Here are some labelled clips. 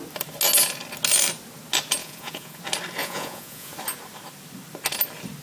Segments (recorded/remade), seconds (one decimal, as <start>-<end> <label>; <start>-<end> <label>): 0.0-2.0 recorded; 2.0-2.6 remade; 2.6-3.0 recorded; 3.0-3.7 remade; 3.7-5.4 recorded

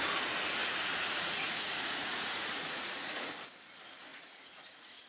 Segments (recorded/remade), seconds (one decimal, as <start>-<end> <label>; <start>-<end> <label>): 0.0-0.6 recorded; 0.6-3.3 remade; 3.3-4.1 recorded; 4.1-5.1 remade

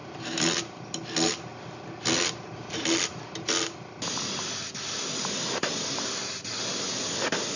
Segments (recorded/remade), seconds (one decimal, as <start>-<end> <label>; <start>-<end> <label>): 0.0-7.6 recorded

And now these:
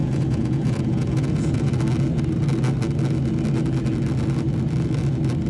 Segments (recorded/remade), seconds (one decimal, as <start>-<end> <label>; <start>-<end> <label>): 0.0-1.7 remade; 1.7-5.5 recorded

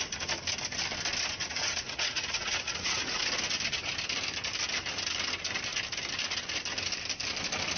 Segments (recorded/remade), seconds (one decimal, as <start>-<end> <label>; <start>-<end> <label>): 0.0-1.4 recorded; 1.4-3.2 remade; 3.2-7.8 recorded

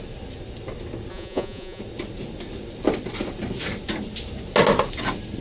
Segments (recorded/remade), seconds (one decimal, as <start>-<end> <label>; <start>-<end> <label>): 0.0-1.1 recorded; 1.1-1.8 remade; 1.8-5.4 recorded